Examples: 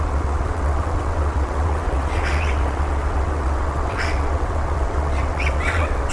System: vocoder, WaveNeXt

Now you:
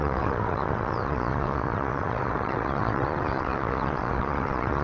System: vocoder, WaveNeXt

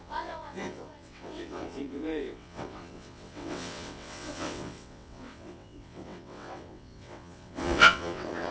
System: vocoder, WaveNeXt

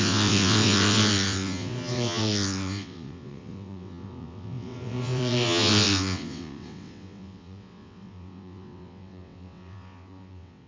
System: vocoder, WaveNeXt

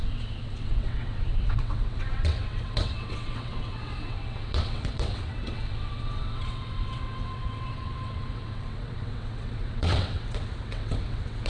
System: vocoder, WaveNeXt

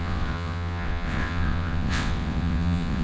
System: vocoder, WaveNeXt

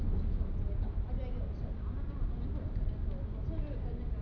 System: none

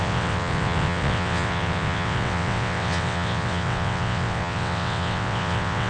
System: vocoder, WaveNeXt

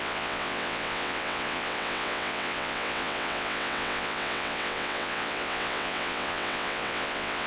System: vocoder, WaveNeXt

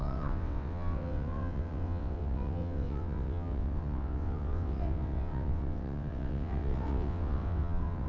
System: vocoder, WaveNeXt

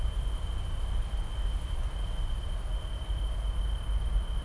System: none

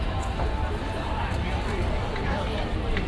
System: none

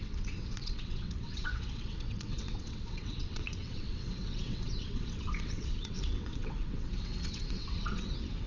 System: vocoder, WaveNeXt